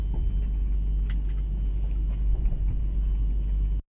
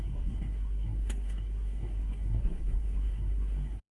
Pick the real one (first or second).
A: first